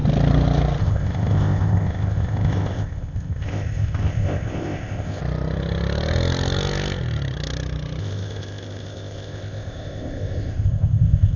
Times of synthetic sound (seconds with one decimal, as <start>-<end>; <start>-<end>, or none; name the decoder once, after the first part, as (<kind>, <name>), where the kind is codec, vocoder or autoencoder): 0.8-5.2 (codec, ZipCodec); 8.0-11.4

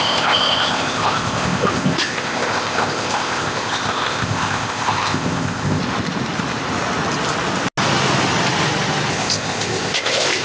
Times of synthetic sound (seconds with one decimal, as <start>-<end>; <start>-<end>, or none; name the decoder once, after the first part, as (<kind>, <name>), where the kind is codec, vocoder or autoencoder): 0.0-5.8 (codec, ZipCodec); 9.1-10.4

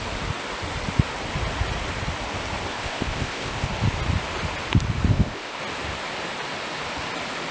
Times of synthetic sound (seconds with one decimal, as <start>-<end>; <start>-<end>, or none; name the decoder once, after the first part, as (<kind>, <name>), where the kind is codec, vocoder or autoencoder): 2.7-3.7 (codec, ZipCodec); 5.1-5.6

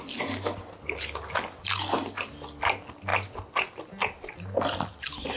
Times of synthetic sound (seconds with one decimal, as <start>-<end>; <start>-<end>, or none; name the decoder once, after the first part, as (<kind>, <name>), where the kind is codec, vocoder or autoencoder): none

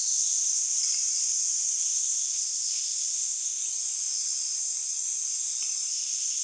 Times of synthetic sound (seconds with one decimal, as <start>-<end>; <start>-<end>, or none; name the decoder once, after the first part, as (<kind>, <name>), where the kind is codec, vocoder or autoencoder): 0.0-0.7 (codec, ZipCodec); 1.8-3.6; 5.9-6.4

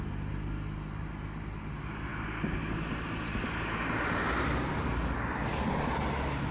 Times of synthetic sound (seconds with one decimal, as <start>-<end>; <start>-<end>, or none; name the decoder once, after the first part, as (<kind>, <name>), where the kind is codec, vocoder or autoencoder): none

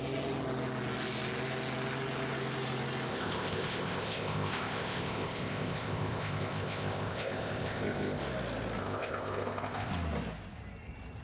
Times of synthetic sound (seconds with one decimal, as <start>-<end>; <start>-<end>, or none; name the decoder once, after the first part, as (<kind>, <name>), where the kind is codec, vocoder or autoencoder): 3.1-8.2 (codec, ZipCodec); 8.8-9.9

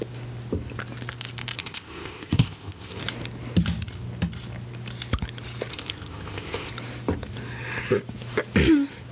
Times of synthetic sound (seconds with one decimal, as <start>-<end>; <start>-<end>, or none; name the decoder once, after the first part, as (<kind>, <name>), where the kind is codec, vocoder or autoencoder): 1.6-3.0 (codec, ZipCodec); 5.7-6.7